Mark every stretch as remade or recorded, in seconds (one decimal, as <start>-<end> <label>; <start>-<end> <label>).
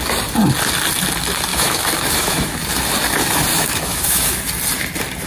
0.0-1.5 recorded; 1.5-2.6 remade; 2.6-3.5 recorded; 3.5-4.4 remade; 4.4-5.3 recorded